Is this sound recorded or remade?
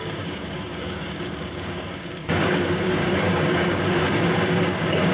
remade